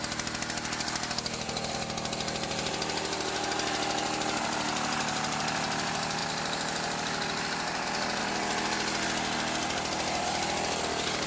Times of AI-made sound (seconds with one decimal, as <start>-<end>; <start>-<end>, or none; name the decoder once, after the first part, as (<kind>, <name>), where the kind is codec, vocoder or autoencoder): none